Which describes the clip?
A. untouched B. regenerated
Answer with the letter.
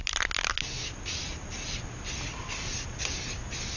A